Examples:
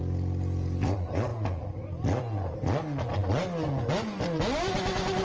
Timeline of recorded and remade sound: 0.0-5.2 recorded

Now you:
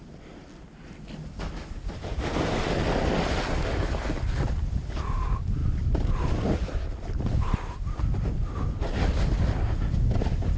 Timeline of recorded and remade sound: 0.0-10.6 recorded

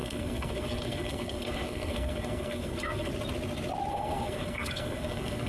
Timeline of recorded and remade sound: 0.0-3.1 remade; 3.1-3.9 recorded; 3.9-5.5 remade

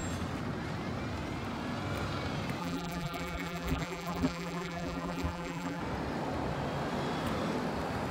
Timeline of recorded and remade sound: 0.0-2.6 recorded; 2.6-5.8 remade; 5.8-8.1 recorded